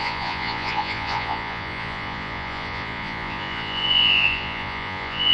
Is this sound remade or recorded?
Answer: remade